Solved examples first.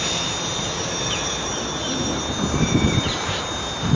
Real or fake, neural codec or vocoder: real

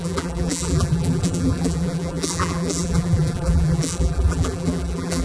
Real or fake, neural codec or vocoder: fake, vocoder, BigVGAN v2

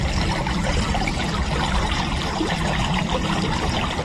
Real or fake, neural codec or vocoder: fake, vocoder, BigVGAN v2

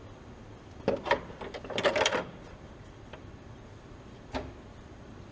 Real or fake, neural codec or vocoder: fake, vocoder, BigVGAN v2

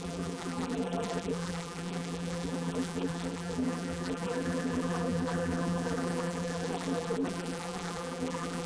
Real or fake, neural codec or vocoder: fake, vocoder, BigVGAN v2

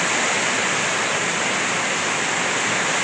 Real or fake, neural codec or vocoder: real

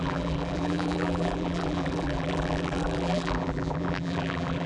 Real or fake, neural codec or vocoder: fake, vocoder, BigVGAN v2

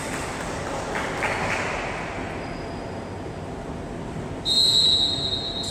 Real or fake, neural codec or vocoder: real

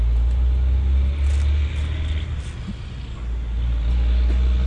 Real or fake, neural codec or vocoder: real